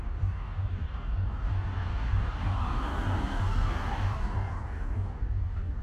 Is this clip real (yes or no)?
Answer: no